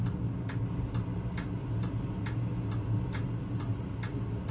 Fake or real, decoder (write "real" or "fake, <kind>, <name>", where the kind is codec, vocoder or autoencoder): real